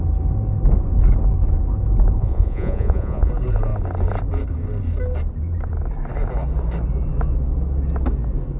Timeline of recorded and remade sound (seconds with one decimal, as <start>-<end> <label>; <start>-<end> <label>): 0.0-2.2 recorded; 2.2-3.3 remade; 3.3-8.6 recorded